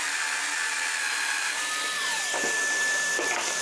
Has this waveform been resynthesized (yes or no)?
no